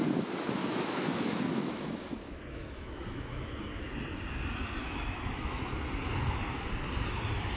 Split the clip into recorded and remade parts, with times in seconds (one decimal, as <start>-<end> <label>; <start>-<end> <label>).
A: 0.0-0.6 recorded; 0.6-3.9 remade; 3.9-4.8 recorded; 4.8-5.6 remade; 5.6-7.6 recorded

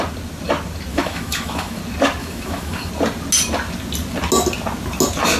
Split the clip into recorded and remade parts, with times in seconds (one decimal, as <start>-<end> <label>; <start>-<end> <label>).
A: 0.0-0.9 recorded; 0.9-1.8 remade; 1.8-2.2 recorded; 2.2-2.9 remade; 2.9-5.4 recorded

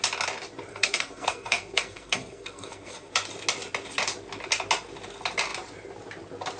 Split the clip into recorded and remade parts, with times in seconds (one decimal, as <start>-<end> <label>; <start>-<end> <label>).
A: 0.0-0.7 recorded; 0.7-3.1 remade; 3.1-6.6 recorded

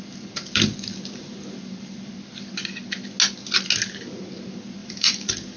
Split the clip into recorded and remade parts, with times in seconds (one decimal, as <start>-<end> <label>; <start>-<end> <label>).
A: 0.0-4.8 recorded; 4.8-5.6 remade

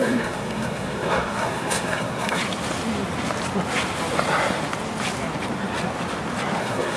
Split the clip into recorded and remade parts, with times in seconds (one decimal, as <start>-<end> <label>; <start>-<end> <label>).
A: 0.0-2.4 remade; 2.4-6.6 recorded; 6.6-7.0 remade

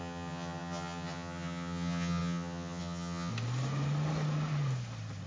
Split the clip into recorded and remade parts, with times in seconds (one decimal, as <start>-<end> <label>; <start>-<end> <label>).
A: 0.0-3.3 remade; 3.3-5.3 recorded

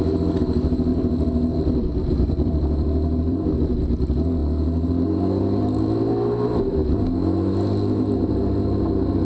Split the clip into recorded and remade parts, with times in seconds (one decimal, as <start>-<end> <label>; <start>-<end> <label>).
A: 0.0-0.9 recorded; 0.9-3.7 remade; 3.7-9.2 recorded

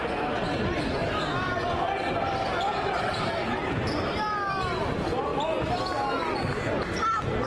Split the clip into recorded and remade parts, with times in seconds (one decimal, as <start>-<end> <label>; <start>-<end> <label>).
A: 0.0-1.0 recorded; 1.0-3.5 remade; 3.5-7.5 recorded